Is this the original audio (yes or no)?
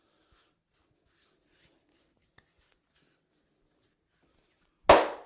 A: yes